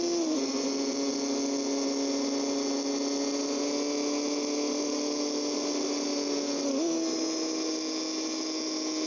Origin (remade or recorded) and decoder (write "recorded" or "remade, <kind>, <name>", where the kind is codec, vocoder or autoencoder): recorded